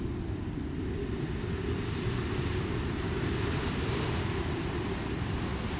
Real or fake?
real